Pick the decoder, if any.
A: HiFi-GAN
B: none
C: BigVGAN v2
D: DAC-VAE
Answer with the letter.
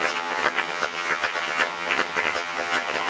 A